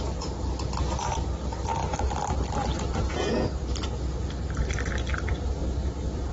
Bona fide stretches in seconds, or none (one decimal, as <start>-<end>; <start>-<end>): 0.0-6.3